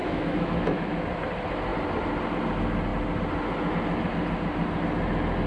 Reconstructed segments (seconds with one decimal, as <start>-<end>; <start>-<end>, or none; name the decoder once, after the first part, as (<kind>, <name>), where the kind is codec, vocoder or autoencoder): 0.0-1.0 (autoencoder, DAC-VAE)